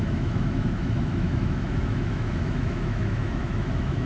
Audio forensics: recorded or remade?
remade